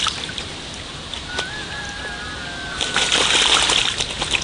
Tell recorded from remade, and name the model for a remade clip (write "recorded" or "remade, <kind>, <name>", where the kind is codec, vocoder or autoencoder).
recorded